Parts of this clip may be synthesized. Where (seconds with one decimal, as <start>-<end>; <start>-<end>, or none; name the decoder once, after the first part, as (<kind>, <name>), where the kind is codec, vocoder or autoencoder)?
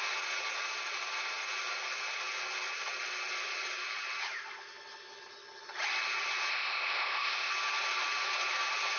6.5-7.5 (codec, ZipCodec)